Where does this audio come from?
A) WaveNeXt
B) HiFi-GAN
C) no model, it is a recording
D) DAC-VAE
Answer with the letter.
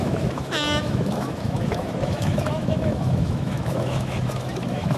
D